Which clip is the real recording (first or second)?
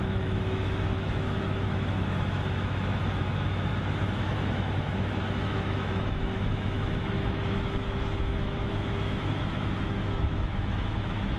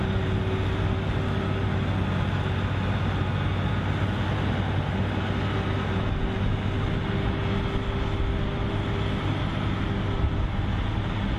second